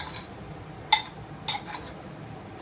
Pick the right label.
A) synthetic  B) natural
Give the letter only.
B